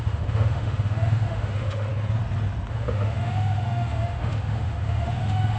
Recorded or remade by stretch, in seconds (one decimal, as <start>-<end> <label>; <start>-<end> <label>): 0.0-1.9 remade; 1.9-2.7 recorded; 2.7-5.6 remade